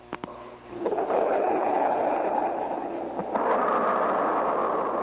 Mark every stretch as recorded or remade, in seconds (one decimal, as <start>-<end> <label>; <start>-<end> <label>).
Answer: 0.0-3.0 remade; 3.0-5.0 recorded

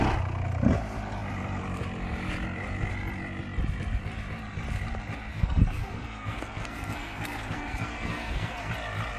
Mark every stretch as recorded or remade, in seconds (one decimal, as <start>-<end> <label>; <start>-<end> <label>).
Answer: 0.0-5.3 recorded; 5.3-8.7 remade; 8.7-9.2 recorded

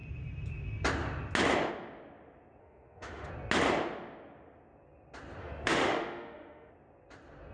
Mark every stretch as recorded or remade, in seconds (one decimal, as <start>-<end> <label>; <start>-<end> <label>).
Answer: 0.0-2.6 recorded; 2.6-3.3 remade; 3.3-5.4 recorded; 5.4-6.7 remade; 6.7-7.5 recorded

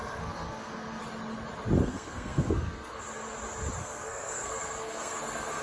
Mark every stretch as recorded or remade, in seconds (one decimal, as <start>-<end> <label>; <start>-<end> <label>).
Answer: 0.0-1.0 remade; 1.0-1.8 recorded; 1.8-3.0 remade; 3.0-3.8 recorded; 3.8-5.6 remade